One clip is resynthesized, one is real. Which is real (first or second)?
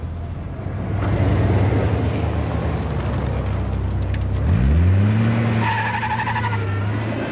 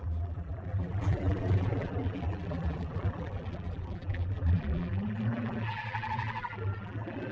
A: first